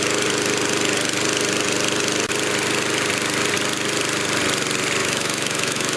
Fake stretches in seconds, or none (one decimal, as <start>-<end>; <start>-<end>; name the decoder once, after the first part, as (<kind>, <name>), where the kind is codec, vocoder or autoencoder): 5.0-6.0 (autoencoder, DAC-VAE)